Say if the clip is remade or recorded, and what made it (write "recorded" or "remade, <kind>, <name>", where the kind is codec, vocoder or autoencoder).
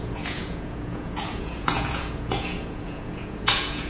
remade, vocoder, Vocos